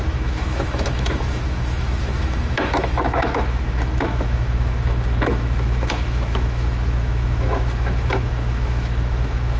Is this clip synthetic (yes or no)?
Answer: yes